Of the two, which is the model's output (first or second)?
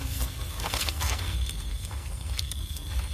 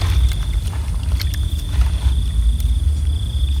first